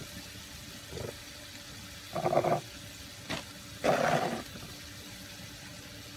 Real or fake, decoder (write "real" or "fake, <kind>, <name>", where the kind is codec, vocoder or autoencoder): real